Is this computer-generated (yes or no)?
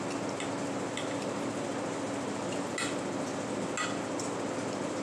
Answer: no